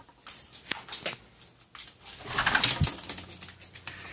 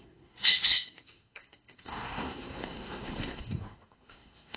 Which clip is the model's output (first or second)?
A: second